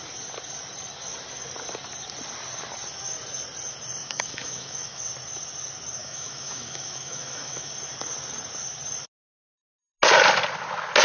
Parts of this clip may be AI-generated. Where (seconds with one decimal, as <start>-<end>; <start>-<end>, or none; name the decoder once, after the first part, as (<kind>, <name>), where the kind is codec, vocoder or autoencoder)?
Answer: 4.0-5.0 (autoencoder, DAC-VAE); 6.0-7.7

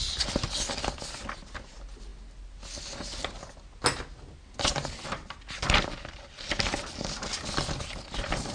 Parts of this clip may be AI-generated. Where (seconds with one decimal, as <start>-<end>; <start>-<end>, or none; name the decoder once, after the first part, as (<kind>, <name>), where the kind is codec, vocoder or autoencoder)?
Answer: none

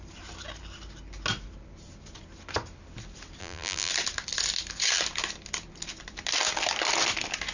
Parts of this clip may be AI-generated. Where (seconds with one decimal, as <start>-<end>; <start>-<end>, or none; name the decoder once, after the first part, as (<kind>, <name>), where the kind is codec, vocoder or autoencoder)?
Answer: 3.4-3.9 (vocoder, BigVGAN v2)

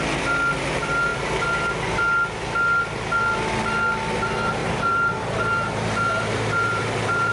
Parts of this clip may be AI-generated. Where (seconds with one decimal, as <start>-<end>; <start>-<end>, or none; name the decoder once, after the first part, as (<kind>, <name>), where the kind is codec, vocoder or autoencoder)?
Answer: 4.6-7.3 (vocoder, BigVGAN v2)

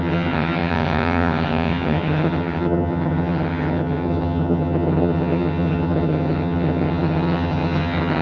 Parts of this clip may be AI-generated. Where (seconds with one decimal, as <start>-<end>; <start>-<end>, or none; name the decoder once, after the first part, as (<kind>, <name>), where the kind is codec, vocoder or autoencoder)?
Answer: 0.0-8.2 (vocoder, HiFi-GAN)

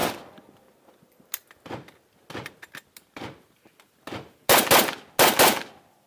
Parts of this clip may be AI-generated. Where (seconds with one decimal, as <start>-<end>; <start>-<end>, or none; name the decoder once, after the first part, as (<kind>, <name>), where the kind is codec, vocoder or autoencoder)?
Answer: none

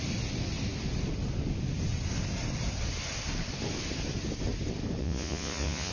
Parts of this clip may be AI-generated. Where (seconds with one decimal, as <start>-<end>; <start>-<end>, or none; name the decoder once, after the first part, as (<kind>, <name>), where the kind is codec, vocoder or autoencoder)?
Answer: 5.0-5.9 (vocoder, Vocos)

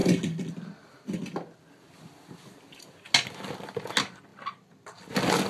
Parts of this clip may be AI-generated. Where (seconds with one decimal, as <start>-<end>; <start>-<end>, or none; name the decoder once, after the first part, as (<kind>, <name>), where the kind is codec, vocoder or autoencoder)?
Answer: none